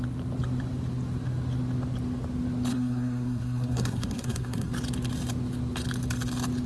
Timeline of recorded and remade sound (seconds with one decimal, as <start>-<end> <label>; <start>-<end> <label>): 0.0-2.7 recorded; 2.7-4.7 remade; 4.7-6.7 recorded